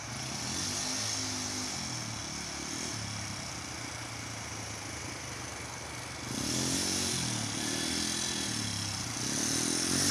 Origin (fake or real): real